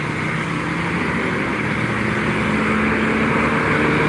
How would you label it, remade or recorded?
recorded